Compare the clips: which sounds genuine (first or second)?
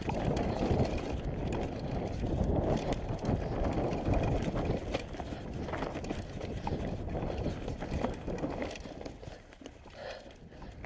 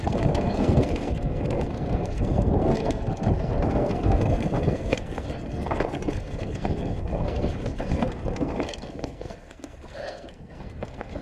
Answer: first